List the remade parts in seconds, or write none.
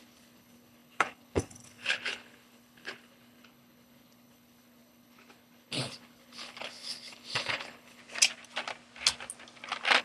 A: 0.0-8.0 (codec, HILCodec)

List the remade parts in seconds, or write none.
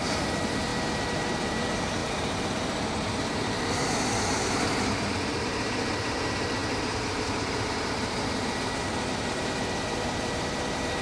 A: 0.0-11.0 (vocoder, BigVGAN v2)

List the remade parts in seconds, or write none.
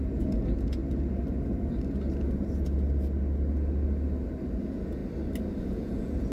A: 0.0-0.8 (vocoder, Vocos); 4.6-5.0; 5.6-6.3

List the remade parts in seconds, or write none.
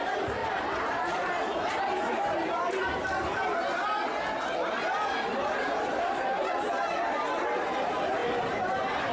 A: 0.4-2.8 (vocoder, BigVGAN v2); 5.3-7.2; 8.2-9.1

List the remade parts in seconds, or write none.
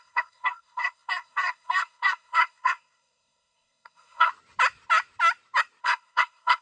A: 0.0-4.3 (codec, SNAC); 5.8-6.6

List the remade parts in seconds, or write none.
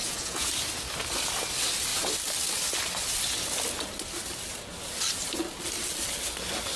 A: 0.0-0.5 (vocoder, Vocos)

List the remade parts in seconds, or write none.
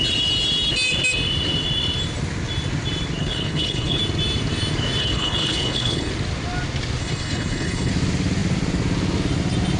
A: 3.2-4.0 (codec, HILCodec); 5.0-6.1; 7.0-7.9